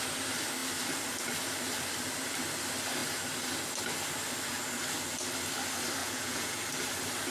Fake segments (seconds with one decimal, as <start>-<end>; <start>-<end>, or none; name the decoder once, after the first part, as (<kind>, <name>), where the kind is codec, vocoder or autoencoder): 6.0-6.6 (vocoder, Vocos)